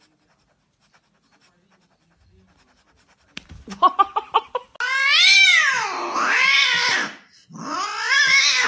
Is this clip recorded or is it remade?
recorded